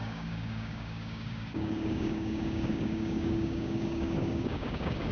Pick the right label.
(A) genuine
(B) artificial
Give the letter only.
B